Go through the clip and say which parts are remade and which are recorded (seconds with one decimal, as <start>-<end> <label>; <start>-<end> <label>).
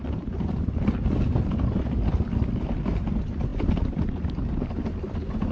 0.0-5.5 remade